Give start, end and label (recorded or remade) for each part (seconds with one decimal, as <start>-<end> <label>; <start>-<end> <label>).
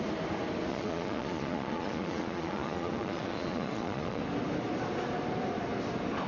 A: 0.0-0.7 recorded; 0.7-4.2 remade; 4.2-6.3 recorded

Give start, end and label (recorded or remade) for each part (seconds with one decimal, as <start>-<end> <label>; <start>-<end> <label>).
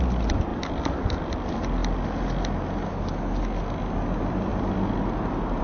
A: 0.0-5.6 recorded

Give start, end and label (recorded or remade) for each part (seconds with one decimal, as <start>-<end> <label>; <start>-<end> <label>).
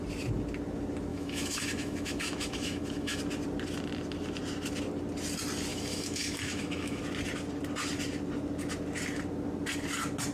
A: 0.0-1.1 recorded; 1.1-3.2 remade; 3.2-5.7 recorded; 5.7-7.0 remade; 7.0-10.3 recorded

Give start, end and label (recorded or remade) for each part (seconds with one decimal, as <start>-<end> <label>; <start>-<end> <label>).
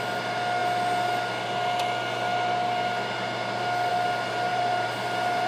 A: 0.0-4.5 recorded; 4.5-5.5 remade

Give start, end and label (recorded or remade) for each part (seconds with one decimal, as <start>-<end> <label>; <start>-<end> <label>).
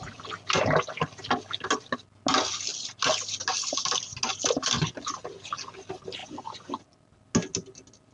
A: 0.0-6.2 recorded; 6.2-6.8 remade; 6.8-8.1 recorded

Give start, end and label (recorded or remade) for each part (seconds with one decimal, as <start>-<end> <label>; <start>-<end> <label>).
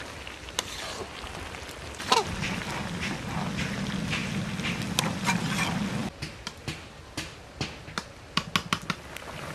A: 0.0-9.5 recorded